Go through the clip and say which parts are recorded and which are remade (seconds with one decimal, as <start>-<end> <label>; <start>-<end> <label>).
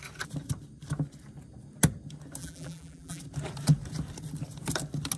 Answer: 0.0-2.4 recorded; 2.4-3.2 remade; 3.2-5.2 recorded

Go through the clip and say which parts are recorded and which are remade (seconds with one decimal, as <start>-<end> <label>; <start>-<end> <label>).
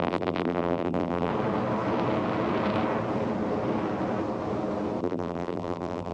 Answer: 0.0-1.3 remade; 1.3-5.0 recorded; 5.0-6.1 remade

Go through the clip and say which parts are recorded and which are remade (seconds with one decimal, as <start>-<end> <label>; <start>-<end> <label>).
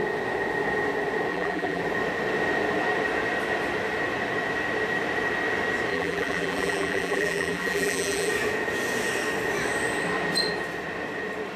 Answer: 0.0-1.3 recorded; 1.3-1.8 remade; 1.8-5.9 recorded; 5.9-8.3 remade; 8.3-11.6 recorded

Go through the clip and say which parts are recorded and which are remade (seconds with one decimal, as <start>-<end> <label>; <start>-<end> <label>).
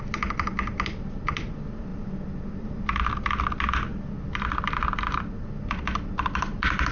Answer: 0.0-1.9 remade; 1.9-4.1 recorded; 4.1-6.9 remade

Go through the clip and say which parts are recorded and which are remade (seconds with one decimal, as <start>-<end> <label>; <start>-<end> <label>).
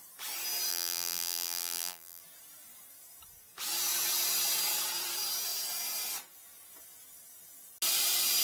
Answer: 0.0-0.7 recorded; 0.7-2.2 remade; 2.2-8.4 recorded